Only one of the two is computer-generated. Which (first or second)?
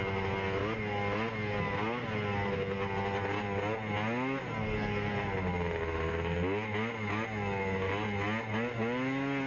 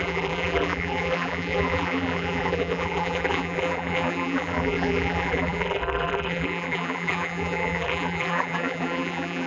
second